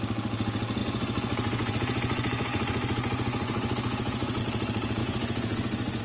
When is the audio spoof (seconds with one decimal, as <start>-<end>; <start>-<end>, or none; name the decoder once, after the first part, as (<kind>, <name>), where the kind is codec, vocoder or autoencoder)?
0.8-4.4 (vocoder, Vocos); 5.0-6.0